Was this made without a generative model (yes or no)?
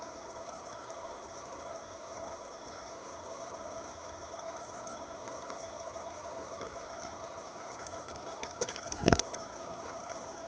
no